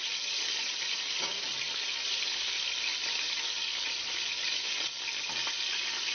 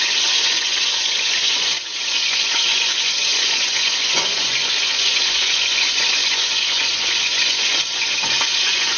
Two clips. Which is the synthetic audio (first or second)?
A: second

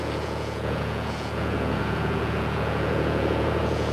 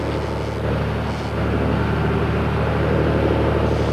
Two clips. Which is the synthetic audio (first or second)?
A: first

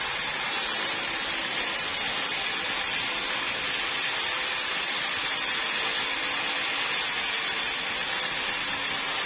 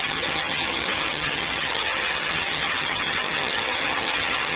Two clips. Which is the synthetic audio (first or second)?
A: second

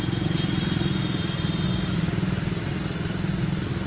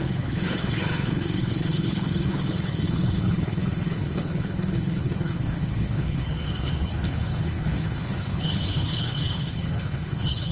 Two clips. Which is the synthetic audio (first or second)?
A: second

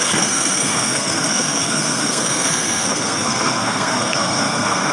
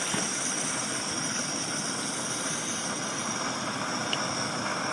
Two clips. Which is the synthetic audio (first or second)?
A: first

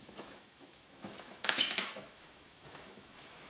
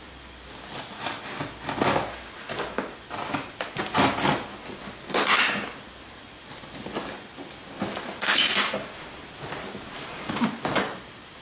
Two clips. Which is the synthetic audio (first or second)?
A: first